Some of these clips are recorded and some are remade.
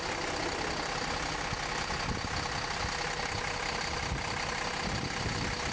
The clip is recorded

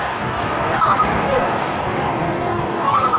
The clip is remade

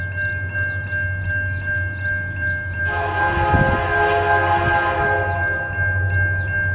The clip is recorded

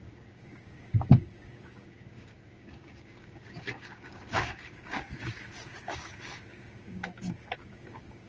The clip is remade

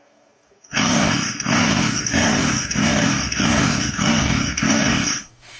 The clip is remade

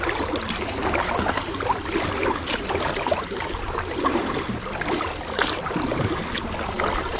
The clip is recorded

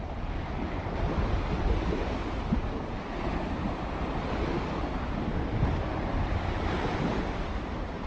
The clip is recorded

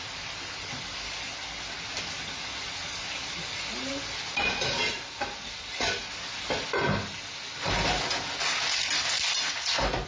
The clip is recorded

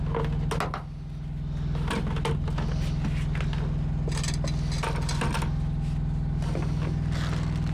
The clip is recorded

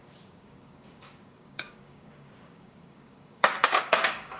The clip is remade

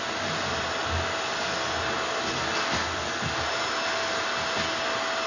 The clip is recorded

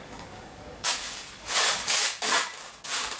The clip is remade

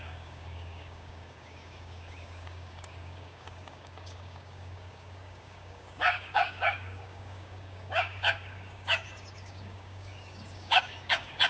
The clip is remade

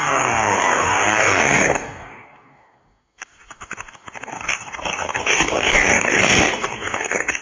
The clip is remade